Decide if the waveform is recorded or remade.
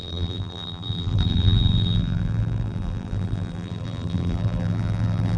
remade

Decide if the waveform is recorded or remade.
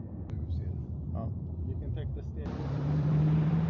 remade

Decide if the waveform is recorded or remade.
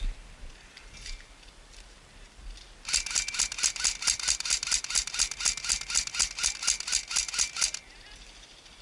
recorded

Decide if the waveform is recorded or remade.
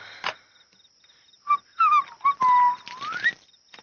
recorded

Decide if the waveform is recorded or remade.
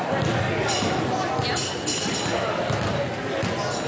recorded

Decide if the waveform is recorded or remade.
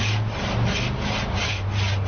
recorded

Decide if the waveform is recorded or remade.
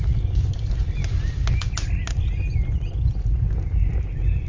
recorded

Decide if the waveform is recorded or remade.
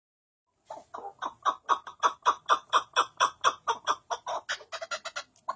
recorded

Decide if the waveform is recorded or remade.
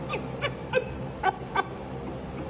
remade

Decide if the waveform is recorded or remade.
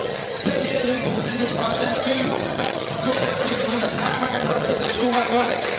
remade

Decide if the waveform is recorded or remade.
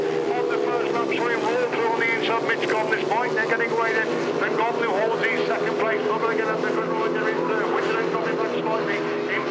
recorded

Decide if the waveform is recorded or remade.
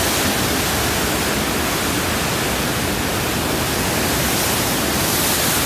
recorded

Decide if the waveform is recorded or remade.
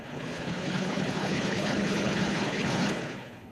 remade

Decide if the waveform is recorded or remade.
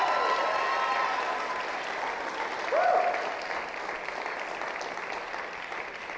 recorded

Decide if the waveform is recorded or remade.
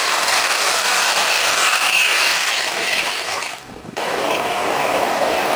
remade